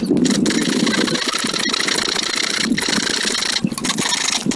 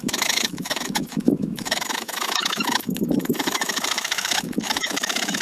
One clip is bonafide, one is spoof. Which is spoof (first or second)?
second